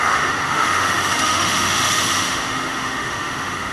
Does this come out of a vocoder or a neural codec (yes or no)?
yes